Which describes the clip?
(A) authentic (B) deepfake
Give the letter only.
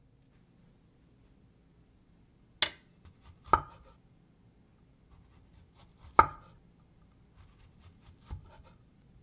A